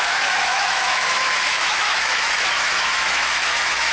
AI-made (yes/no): yes